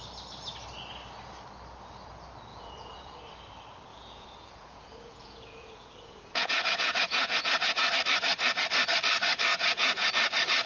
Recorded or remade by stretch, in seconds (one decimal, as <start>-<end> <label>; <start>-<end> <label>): 0.0-2.5 recorded; 2.5-3.2 remade; 3.2-3.9 recorded; 3.9-7.9 remade; 7.9-9.5 recorded; 9.5-10.1 remade; 10.1-10.7 recorded